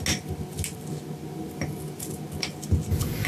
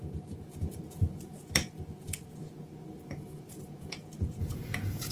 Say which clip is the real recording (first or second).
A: first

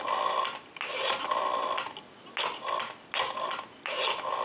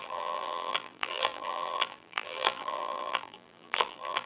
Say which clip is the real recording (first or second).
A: first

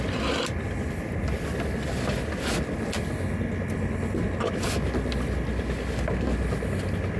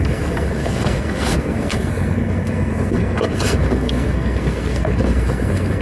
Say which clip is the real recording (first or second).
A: first